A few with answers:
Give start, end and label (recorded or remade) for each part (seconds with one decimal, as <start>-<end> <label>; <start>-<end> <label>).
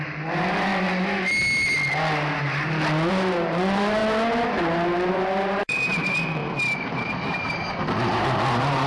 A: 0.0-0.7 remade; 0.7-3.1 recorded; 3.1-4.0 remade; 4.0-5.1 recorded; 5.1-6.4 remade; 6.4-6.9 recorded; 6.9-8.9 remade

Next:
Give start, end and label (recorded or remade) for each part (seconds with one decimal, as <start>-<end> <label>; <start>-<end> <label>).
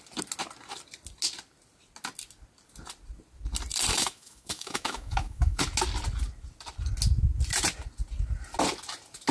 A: 0.0-3.9 recorded; 3.9-5.6 remade; 5.6-9.3 recorded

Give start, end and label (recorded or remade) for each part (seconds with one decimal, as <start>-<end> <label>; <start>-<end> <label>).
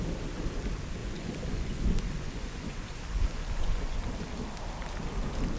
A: 0.0-1.0 recorded; 1.0-4.1 remade; 4.1-5.6 recorded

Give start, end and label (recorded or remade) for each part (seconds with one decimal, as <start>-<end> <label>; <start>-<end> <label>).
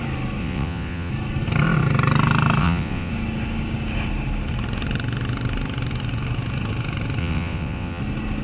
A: 0.0-0.4 recorded; 0.4-1.1 remade; 1.1-2.6 recorded; 2.6-3.1 remade; 3.1-7.2 recorded; 7.2-8.0 remade; 8.0-8.4 recorded